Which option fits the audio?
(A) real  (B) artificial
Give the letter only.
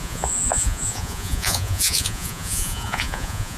B